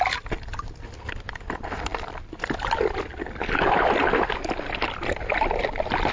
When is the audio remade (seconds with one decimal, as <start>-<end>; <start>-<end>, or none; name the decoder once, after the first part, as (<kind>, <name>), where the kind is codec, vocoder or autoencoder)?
none